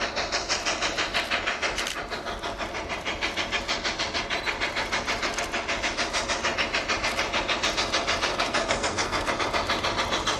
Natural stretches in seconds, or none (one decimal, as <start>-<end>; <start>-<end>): 0.0-8.3; 9.3-10.4